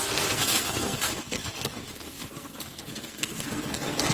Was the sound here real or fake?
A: fake